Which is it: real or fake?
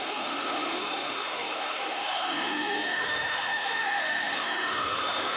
fake